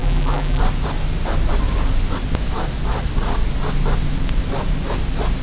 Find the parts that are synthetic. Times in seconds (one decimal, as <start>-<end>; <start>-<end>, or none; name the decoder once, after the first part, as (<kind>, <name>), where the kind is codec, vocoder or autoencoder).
0.0-0.6 (vocoder, BigVGAN v2)